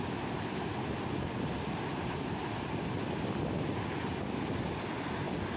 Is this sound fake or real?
real